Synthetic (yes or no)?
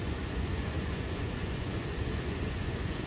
yes